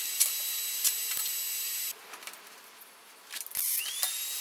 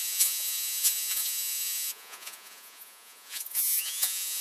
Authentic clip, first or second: first